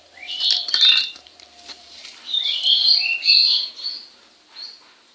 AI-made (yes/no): yes